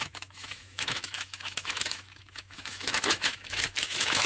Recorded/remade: remade